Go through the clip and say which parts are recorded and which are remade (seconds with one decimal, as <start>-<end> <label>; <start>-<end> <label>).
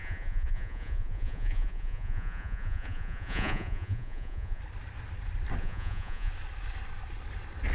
0.0-4.6 remade; 4.6-5.6 recorded; 5.6-6.3 remade; 6.3-7.7 recorded